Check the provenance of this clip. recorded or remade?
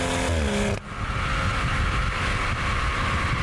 recorded